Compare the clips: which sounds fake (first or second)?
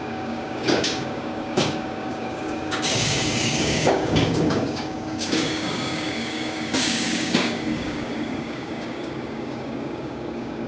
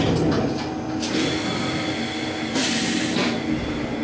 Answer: first